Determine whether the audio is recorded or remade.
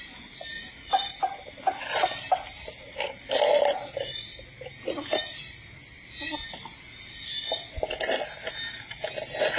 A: recorded